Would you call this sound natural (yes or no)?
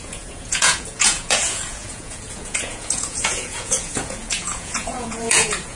no